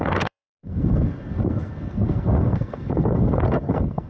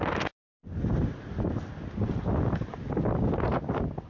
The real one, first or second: second